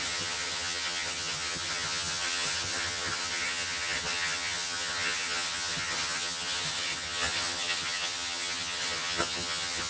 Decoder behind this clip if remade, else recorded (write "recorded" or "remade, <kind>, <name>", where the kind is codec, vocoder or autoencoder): remade, vocoder, HiFi-GAN